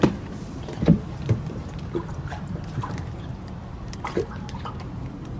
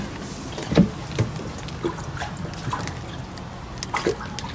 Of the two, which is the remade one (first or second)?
first